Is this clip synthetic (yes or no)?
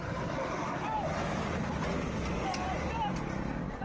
no